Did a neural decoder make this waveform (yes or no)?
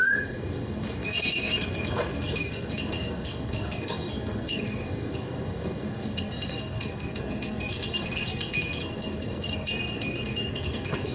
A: yes